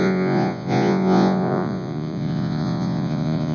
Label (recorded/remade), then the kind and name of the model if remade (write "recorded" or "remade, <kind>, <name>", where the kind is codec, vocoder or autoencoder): remade, vocoder, Vocos